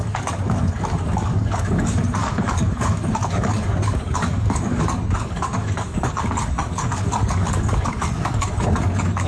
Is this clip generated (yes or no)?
yes